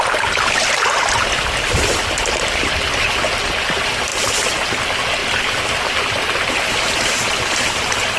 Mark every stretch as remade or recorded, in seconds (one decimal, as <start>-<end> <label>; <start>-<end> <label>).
0.0-8.2 recorded